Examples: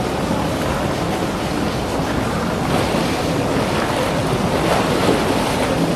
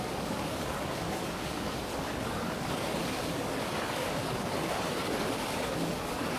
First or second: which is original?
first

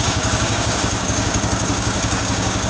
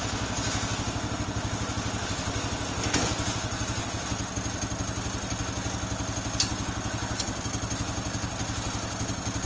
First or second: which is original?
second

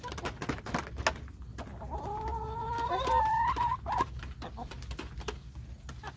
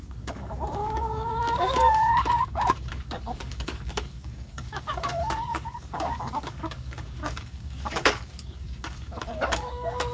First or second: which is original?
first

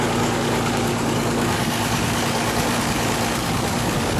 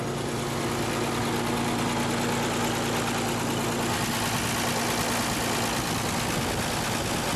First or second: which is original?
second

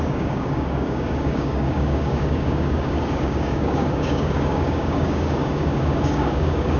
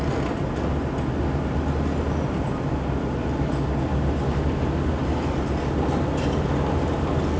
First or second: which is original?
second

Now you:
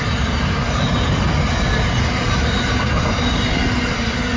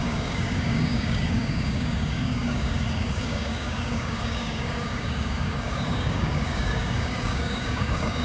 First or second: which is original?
first